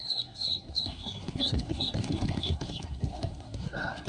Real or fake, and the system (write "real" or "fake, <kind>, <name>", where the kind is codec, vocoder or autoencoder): fake, codec, SNAC